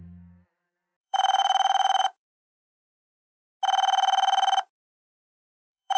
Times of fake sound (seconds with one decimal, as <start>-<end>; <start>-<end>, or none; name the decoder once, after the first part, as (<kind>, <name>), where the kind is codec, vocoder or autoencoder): 0.0-3.0 (vocoder, BigVGAN v2); 5.2-6.0